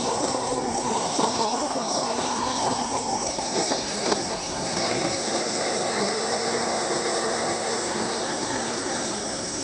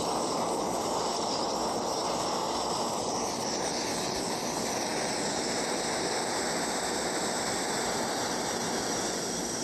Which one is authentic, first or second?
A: second